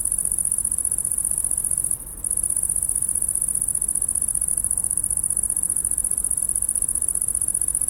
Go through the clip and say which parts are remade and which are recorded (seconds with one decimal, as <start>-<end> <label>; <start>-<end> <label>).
0.0-2.1 remade; 2.1-4.5 recorded; 4.5-7.9 remade